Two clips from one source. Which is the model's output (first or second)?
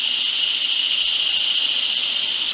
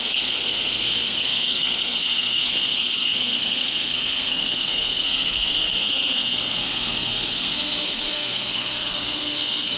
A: second